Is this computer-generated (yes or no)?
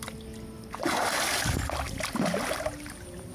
no